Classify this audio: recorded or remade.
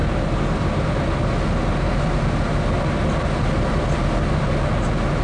recorded